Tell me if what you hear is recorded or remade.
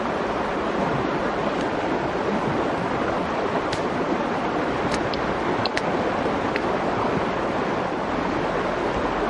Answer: recorded